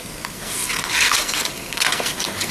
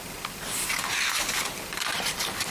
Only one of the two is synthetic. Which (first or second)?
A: first